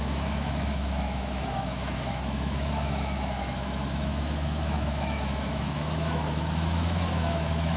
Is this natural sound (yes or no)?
no